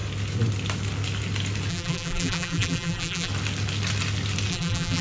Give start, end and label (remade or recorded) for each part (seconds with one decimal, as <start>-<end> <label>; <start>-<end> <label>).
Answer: 0.0-1.7 recorded; 1.7-3.3 remade; 3.3-4.5 recorded; 4.5-5.0 remade